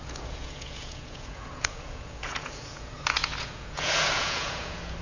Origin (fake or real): fake